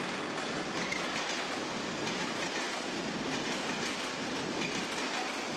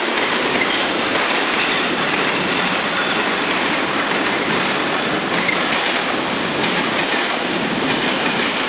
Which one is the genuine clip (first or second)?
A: first